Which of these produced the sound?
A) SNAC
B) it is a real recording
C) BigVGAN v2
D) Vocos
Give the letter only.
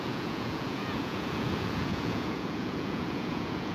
D